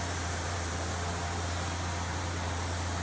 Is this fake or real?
fake